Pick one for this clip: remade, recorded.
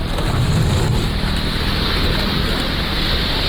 recorded